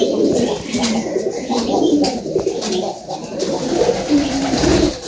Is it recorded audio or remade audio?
remade